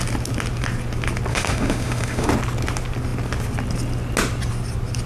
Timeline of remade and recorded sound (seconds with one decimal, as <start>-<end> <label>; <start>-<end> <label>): 0.0-1.3 recorded; 1.3-2.3 remade; 2.3-5.1 recorded